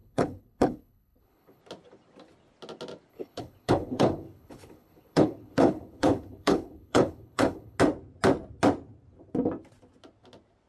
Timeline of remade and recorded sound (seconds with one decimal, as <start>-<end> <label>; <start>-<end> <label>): 0.0-1.6 remade; 1.6-3.1 recorded; 3.1-7.8 remade; 7.8-10.7 recorded